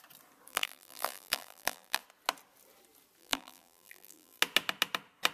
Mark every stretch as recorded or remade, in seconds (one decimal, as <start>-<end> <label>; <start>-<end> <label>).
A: 0.0-0.5 recorded; 0.5-2.0 remade; 2.0-3.2 recorded; 3.2-4.4 remade; 4.4-5.3 recorded